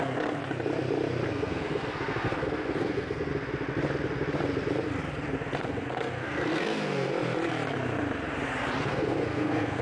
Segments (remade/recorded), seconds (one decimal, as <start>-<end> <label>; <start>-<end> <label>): 0.0-0.4 remade; 0.4-1.3 recorded; 1.3-3.3 remade; 3.3-5.6 recorded; 5.6-7.1 remade; 7.1-8.8 recorded; 8.8-9.8 remade